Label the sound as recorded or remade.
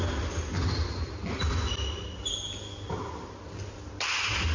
recorded